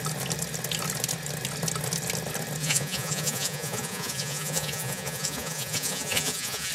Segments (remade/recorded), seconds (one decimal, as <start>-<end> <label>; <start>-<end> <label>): 0.0-2.6 recorded; 2.6-6.7 remade